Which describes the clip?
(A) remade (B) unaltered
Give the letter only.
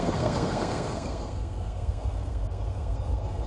A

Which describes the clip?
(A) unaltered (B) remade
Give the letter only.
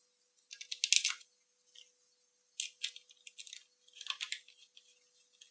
A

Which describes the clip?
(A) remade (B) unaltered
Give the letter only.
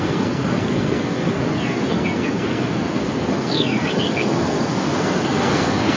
A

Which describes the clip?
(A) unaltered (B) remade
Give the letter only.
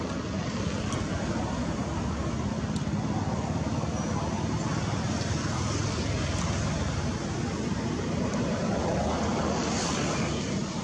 A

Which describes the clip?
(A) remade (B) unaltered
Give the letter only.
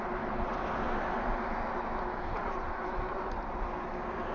B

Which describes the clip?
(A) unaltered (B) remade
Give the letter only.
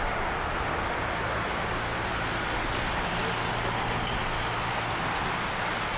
A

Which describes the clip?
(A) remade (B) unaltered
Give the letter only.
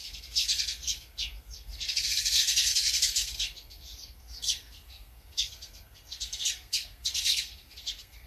A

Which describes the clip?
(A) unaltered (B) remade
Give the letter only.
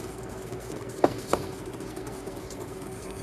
B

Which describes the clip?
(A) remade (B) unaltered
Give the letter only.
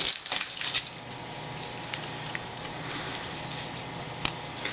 B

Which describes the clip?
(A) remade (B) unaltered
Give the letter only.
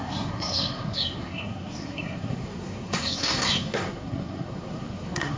A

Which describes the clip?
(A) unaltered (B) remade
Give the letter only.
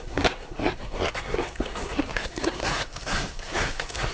B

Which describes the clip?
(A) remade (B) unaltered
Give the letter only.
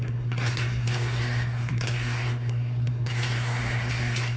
A